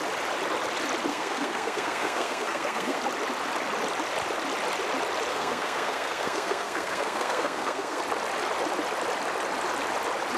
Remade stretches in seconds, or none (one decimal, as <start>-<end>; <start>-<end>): 1.1-3.0; 5.3-8.0